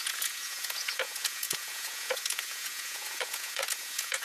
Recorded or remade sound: remade